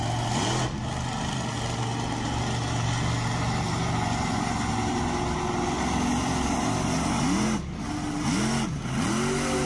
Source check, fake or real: real